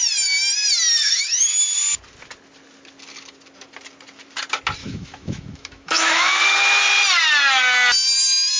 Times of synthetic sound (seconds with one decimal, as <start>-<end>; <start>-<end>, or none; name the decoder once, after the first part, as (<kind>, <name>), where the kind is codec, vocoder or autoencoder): 1.0-1.6 (autoencoder, DAC-VAE); 4.8-6.3